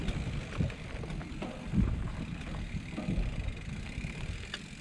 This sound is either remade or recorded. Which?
recorded